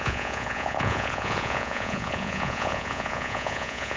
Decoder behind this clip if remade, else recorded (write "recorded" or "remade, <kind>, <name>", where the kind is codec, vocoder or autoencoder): remade, vocoder, Vocos